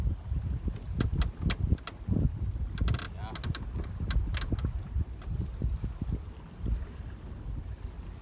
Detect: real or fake real